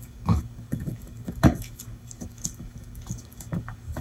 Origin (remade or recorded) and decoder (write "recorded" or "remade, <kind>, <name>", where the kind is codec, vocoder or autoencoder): remade, codec, DAC